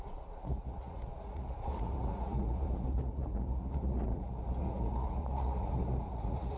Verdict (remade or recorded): remade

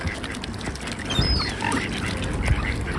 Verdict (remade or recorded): recorded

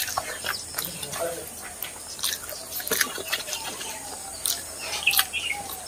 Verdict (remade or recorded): recorded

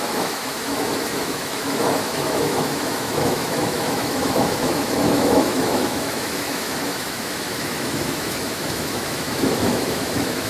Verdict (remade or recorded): remade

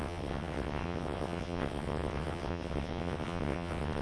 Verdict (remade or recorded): remade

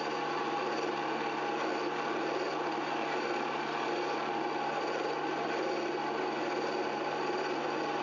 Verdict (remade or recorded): recorded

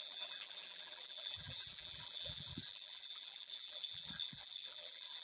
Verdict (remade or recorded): remade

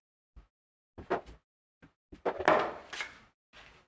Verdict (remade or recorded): recorded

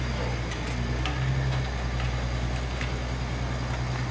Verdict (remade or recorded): recorded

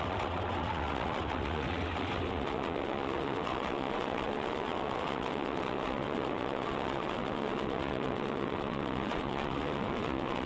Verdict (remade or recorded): remade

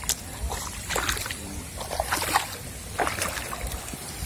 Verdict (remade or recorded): remade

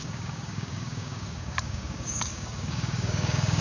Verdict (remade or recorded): remade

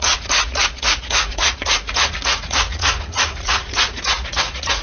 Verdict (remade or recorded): remade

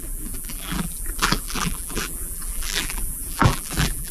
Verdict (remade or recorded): remade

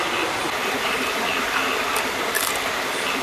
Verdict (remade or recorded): recorded